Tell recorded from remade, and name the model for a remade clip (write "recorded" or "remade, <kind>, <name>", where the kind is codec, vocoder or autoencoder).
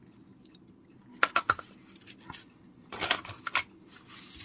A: recorded